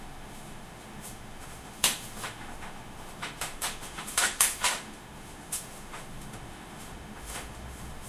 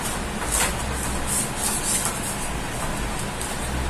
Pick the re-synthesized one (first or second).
first